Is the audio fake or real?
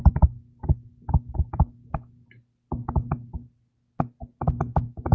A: real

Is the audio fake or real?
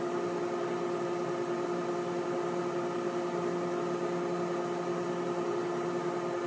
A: real